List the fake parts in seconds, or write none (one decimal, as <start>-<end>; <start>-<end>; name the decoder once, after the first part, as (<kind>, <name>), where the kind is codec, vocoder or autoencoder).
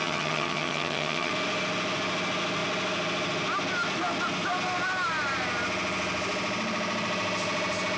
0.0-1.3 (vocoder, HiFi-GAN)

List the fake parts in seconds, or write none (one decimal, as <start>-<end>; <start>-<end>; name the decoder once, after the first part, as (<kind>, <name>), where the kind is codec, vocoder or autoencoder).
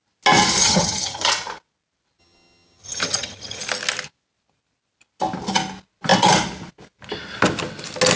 0.6-1.3 (vocoder, HiFi-GAN); 2.2-3.6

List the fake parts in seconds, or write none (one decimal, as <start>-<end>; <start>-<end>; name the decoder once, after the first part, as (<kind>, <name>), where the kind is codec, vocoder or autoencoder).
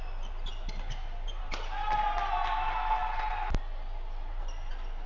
none